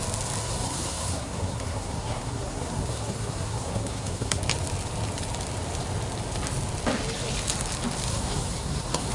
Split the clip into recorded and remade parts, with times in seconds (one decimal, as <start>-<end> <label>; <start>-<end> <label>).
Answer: 0.0-0.4 recorded; 0.4-4.4 remade; 4.4-8.1 recorded; 8.1-9.1 remade